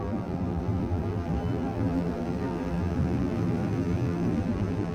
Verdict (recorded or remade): remade